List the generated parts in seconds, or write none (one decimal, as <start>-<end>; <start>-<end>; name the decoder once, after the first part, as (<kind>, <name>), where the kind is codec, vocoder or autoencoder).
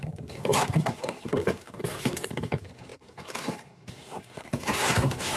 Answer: 0.0-5.4 (codec, SNAC)